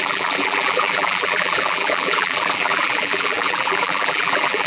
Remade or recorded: remade